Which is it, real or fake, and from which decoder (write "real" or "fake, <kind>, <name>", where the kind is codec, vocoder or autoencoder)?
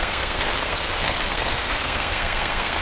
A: fake, codec, SNAC